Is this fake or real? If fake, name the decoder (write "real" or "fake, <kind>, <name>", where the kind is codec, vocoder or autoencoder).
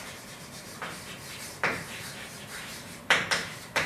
fake, vocoder, BigVGAN v2